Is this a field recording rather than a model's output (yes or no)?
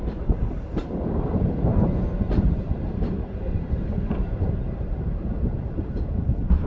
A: no